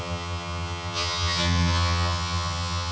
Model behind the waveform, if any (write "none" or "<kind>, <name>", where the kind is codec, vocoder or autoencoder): vocoder, HiFi-GAN